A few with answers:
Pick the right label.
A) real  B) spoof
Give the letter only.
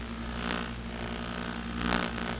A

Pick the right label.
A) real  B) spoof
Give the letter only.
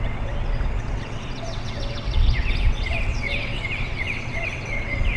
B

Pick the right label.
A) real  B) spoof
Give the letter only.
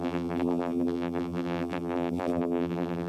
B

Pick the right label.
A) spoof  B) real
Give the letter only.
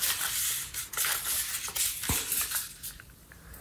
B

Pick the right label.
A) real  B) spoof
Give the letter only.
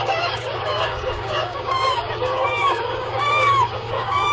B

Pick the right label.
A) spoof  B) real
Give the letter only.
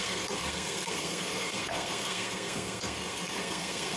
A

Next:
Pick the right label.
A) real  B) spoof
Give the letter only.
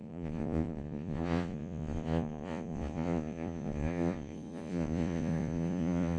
B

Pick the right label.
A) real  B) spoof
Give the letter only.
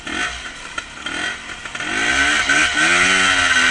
A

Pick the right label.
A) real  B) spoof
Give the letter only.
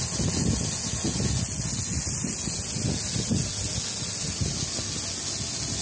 A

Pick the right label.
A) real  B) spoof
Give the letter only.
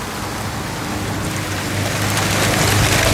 A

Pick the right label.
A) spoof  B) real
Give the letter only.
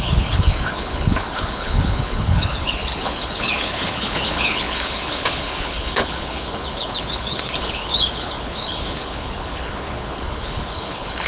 A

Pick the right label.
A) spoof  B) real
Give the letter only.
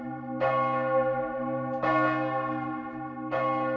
B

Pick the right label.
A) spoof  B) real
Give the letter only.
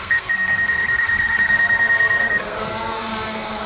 A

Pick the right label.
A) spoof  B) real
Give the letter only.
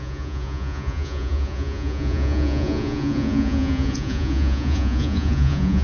A